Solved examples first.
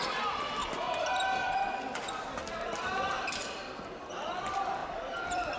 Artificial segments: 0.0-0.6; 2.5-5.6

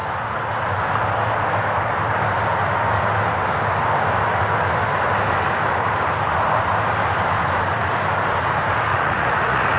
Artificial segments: 8.9-9.8

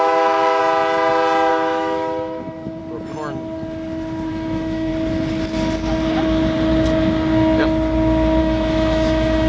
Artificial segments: 0.0-0.6; 1.5-2.8; 4.3-4.9; 8.4-9.5